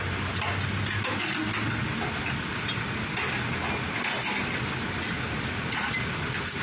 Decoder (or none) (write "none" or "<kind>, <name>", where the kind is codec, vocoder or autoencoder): none